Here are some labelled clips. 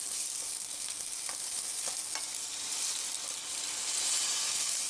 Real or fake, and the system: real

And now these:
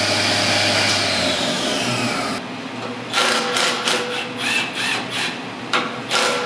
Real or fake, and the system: real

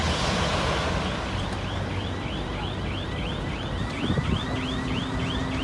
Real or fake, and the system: real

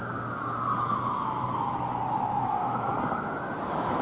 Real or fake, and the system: fake, autoencoder, DAC-VAE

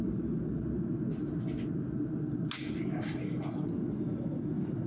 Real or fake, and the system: real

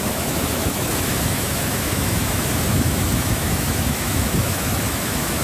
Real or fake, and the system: fake, autoencoder, DAC-VAE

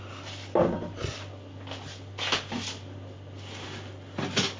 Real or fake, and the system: real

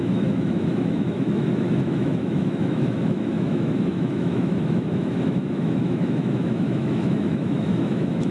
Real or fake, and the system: fake, autoencoder, DAC-VAE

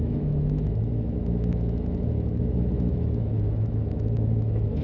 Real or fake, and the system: fake, autoencoder, DAC-VAE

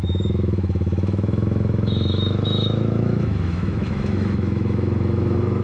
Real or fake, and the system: fake, autoencoder, DAC-VAE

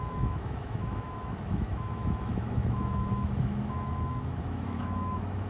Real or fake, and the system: fake, autoencoder, DAC-VAE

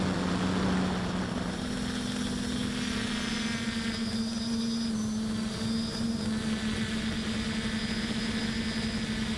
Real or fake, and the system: real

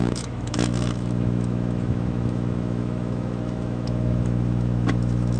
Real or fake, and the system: fake, autoencoder, DAC-VAE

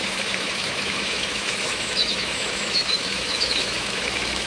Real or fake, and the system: fake, autoencoder, DAC-VAE